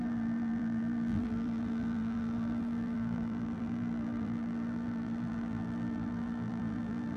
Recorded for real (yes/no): no